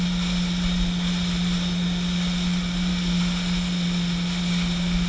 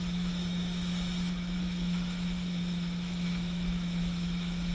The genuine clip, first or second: first